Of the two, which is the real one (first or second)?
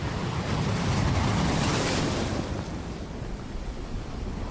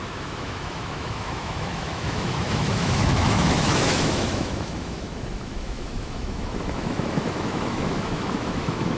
first